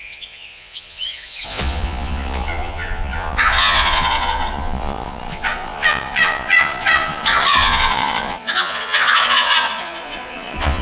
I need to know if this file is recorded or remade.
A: remade